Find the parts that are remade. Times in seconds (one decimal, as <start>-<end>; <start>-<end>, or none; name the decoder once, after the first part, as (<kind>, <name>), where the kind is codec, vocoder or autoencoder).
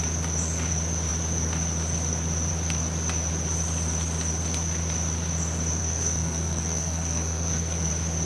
5.8-7.9 (codec, SNAC)